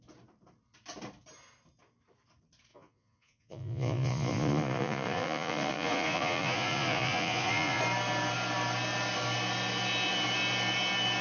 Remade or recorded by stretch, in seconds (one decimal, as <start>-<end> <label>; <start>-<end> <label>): 0.0-2.7 recorded; 2.7-7.8 remade; 7.8-11.2 recorded